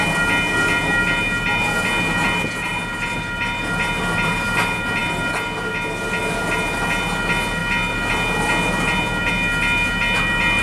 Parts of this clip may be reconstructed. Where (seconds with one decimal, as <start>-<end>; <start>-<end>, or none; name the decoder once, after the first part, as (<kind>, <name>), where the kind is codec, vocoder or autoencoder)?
none